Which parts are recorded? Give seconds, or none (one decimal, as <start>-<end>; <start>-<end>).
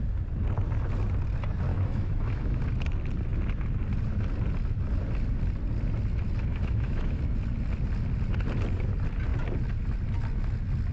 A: 0.0-1.7; 2.6-6.5; 7.2-10.9